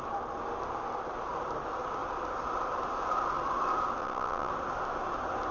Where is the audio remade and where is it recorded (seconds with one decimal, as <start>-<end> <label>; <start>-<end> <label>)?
0.0-4.0 recorded; 4.0-4.5 remade; 4.5-5.5 recorded